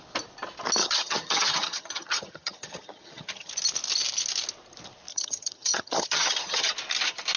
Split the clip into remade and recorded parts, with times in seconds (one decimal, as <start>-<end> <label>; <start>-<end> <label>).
0.0-0.8 recorded; 0.8-3.5 remade; 3.5-5.1 recorded; 5.1-6.7 remade; 6.7-7.4 recorded